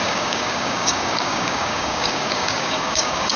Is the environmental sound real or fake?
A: fake